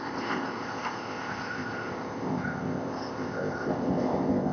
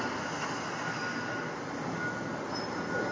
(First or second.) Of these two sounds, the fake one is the first